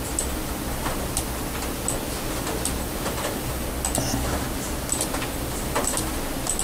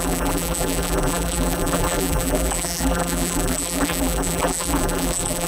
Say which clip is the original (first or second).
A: first